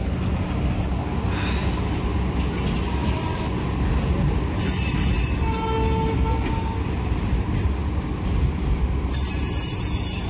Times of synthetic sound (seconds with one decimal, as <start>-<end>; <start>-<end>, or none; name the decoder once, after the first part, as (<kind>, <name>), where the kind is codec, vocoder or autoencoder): none